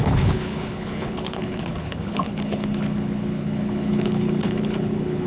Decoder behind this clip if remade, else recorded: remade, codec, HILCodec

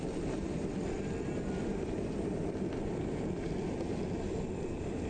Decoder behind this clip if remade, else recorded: recorded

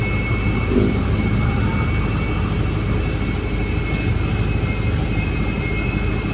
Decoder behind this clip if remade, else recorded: recorded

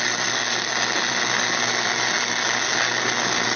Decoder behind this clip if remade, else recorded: recorded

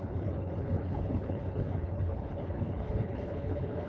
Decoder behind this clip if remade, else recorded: remade, codec, HILCodec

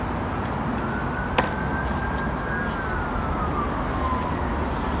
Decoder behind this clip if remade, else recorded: recorded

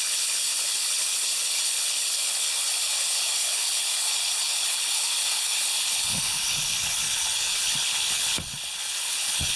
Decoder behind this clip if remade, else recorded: remade, codec, HILCodec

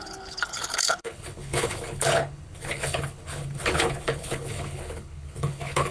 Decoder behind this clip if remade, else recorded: remade, codec, HILCodec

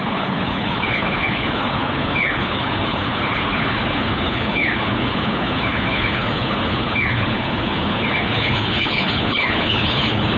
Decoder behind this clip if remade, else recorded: remade, codec, HILCodec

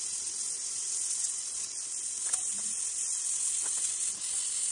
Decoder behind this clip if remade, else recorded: recorded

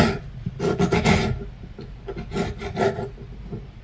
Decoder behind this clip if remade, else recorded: recorded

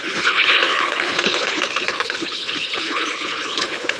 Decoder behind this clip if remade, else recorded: remade, codec, HILCodec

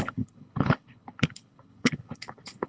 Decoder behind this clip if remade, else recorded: remade, codec, HILCodec